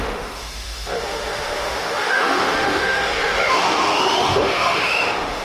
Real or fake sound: fake